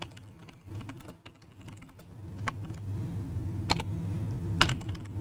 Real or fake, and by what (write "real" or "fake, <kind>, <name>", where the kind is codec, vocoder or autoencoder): real